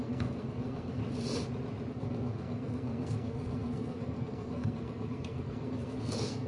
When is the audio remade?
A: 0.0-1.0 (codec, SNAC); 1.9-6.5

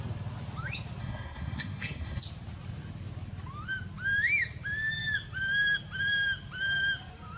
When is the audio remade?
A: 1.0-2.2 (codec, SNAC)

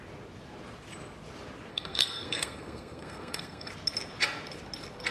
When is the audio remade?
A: 1.7-3.7 (codec, SNAC)

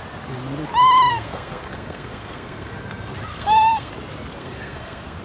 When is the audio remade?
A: 1.1-2.7 (codec, SNAC); 3.3-3.9; 4.4-5.2

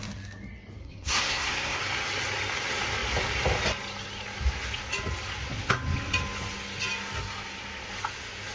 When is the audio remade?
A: 0.8-1.8 (codec, SNAC)

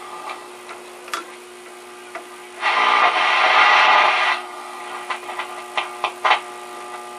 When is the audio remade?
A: 0.0-0.5 (codec, SNAC); 4.3-4.8